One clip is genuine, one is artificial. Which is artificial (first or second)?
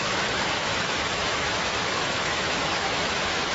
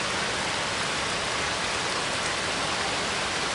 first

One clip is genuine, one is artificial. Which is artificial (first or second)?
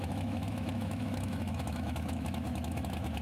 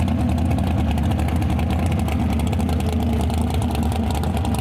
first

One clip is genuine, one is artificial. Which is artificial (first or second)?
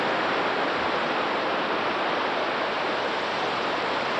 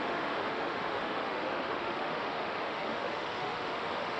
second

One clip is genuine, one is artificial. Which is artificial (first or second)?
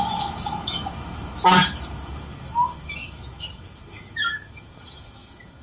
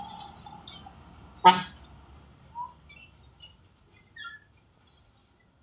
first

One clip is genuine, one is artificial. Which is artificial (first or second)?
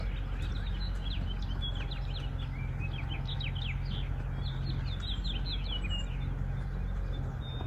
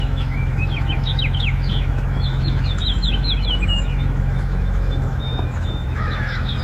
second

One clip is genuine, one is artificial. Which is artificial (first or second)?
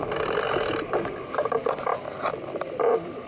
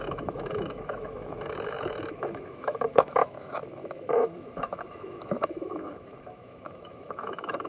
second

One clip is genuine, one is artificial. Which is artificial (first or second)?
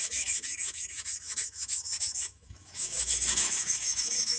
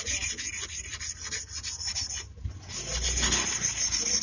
first